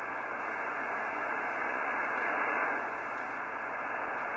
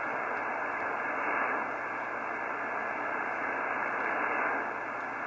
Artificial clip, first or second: first